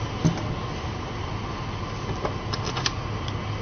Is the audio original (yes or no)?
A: yes